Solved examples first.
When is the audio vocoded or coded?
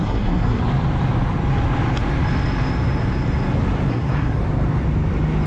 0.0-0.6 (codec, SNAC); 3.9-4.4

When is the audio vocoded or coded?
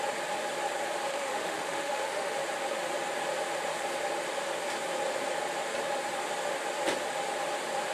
1.1-2.4 (autoencoder, DAC-VAE)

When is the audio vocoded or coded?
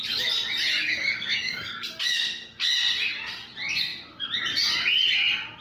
0.7-2.0 (codec, DAC)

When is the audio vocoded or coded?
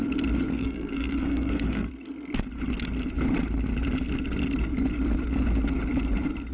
0.5-1.9 (codec, SNAC)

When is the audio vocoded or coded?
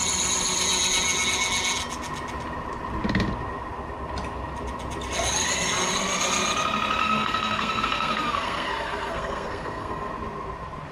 7.0-10.1 (codec, SNAC)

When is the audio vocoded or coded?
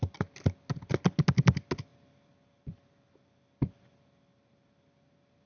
none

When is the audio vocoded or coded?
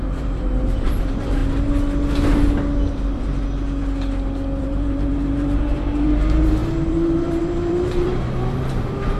0.0-1.4 (vocoder, BigVGAN v2); 4.6-9.2